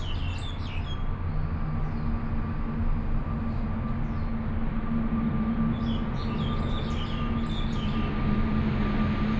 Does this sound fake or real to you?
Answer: real